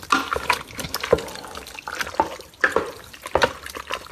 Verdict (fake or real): real